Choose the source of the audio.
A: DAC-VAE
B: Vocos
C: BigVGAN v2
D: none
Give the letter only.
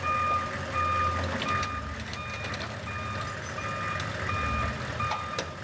D